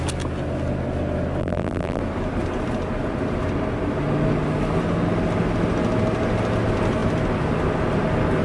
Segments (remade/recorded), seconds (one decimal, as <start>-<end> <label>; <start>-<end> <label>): 0.0-1.4 recorded; 1.4-2.0 remade; 2.0-8.4 recorded